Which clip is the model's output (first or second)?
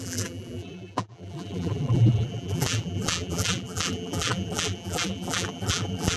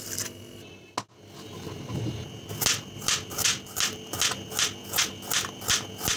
first